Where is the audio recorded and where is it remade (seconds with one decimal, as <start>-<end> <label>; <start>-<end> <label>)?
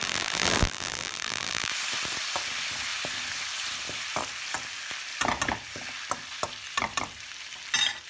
0.0-1.7 remade; 1.7-8.1 recorded